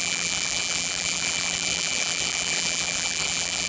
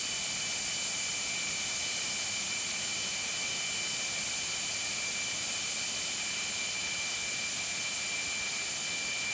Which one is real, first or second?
second